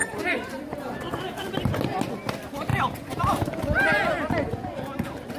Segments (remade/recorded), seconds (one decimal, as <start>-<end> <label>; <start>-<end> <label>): 0.0-1.0 remade; 1.0-5.4 recorded